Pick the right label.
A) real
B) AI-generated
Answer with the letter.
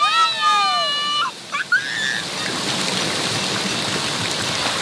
A